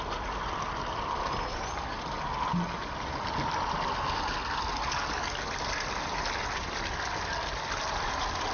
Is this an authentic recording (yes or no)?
yes